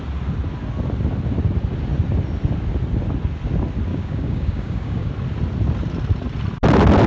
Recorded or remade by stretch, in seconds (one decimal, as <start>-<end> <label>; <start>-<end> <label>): 0.0-3.9 recorded; 3.9-5.1 remade; 5.1-7.1 recorded